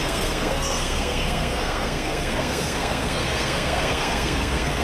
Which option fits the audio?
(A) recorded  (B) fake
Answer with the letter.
B